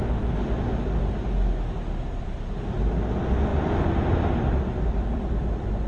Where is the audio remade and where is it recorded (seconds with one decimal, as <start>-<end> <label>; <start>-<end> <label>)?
0.0-0.4 recorded; 0.4-1.0 remade; 1.0-3.5 recorded; 3.5-5.5 remade; 5.5-5.9 recorded